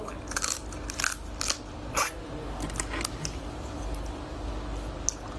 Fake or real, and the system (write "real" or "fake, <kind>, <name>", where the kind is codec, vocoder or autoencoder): real